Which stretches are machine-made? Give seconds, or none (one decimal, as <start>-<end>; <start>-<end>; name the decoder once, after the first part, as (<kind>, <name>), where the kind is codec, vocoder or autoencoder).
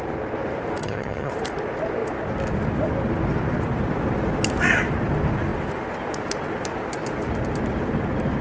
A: 0.8-1.3 (vocoder, HiFi-GAN)